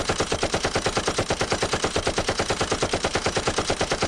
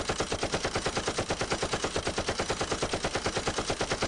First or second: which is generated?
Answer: first